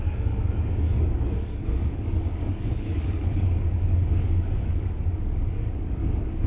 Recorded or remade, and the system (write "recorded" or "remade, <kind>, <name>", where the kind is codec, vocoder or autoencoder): remade, codec, DAC